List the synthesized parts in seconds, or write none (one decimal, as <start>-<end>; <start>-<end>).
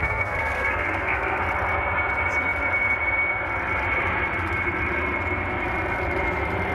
0.0-1.4